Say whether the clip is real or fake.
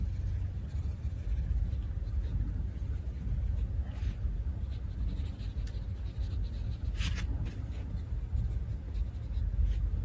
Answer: real